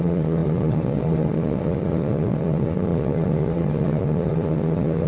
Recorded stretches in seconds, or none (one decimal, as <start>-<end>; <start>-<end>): none